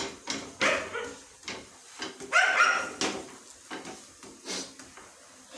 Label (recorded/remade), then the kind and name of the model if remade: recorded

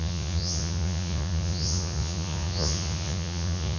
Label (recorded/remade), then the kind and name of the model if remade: remade, vocoder, Vocos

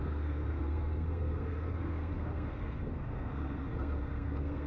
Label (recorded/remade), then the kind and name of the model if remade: remade, codec, SNAC